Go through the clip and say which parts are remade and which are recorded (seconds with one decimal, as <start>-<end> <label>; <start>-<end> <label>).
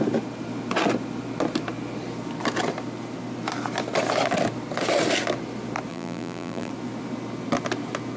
0.0-5.9 recorded; 5.9-6.7 remade; 6.7-8.2 recorded